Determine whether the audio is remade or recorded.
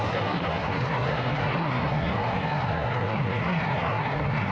remade